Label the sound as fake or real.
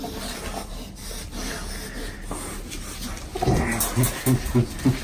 real